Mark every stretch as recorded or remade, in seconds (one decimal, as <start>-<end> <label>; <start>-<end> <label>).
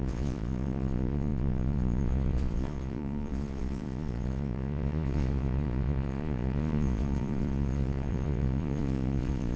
0.0-9.6 remade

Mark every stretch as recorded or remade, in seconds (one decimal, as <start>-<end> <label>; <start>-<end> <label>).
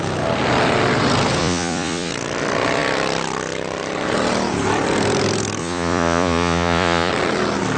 0.0-1.4 recorded; 1.4-2.1 remade; 2.1-5.6 recorded; 5.6-7.1 remade; 7.1-7.8 recorded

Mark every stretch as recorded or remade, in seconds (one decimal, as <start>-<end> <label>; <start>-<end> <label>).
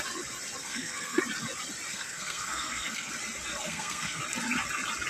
0.0-0.6 recorded; 0.6-1.2 remade; 1.2-1.9 recorded; 1.9-3.1 remade; 3.1-3.5 recorded; 3.5-4.2 remade; 4.2-5.1 recorded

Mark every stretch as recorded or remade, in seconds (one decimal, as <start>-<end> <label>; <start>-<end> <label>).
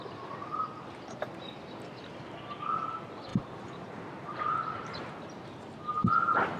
0.0-3.3 recorded; 3.3-5.1 remade; 5.1-6.6 recorded